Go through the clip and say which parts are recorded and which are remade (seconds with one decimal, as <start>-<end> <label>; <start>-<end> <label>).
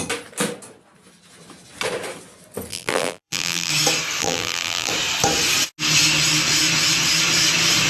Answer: 0.0-2.7 recorded; 2.7-3.7 remade; 3.7-4.2 recorded; 4.2-4.9 remade; 4.9-7.9 recorded